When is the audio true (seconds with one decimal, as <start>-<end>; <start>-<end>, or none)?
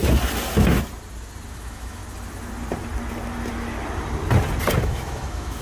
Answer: 0.0-1.5; 2.0-4.8